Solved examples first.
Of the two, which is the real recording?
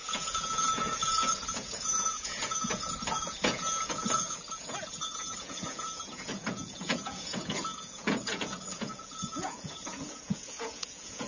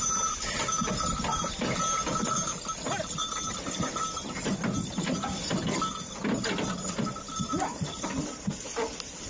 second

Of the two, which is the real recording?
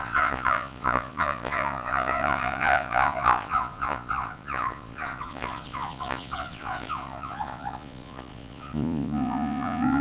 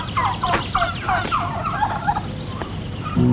second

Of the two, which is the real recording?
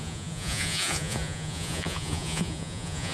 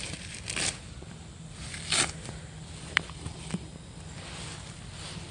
second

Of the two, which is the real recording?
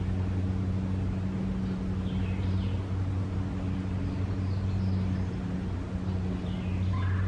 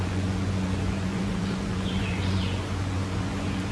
first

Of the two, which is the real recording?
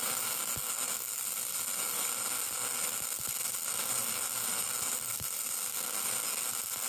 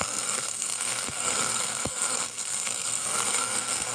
first